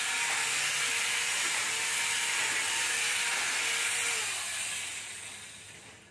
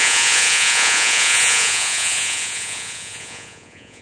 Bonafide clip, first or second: first